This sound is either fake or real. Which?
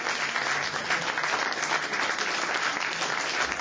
real